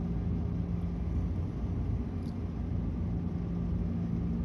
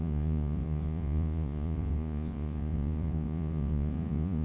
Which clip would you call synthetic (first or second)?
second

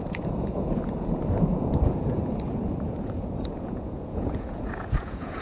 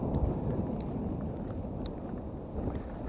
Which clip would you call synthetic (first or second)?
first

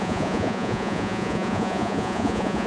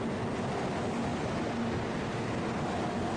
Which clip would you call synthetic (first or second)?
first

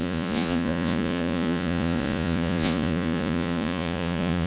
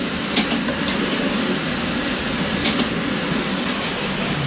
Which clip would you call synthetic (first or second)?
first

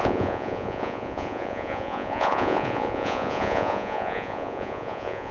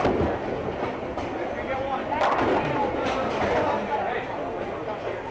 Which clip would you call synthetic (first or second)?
first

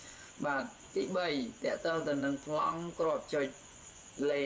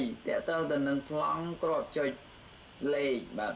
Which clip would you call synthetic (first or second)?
first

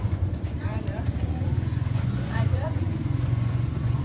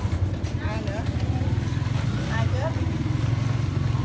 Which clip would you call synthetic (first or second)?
first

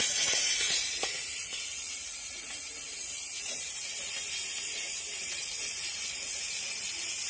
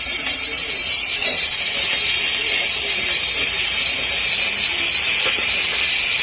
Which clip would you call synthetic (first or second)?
first